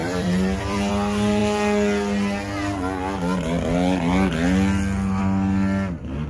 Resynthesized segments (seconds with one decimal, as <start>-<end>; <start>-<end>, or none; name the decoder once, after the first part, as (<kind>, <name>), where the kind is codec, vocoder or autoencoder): 0.0-0.9 (vocoder, BigVGAN v2)